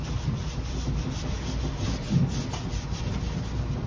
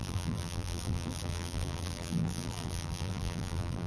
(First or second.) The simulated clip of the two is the second